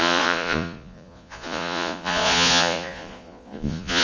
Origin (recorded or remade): remade